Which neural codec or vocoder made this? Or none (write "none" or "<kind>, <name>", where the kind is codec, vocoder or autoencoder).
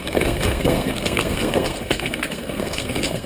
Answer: codec, SNAC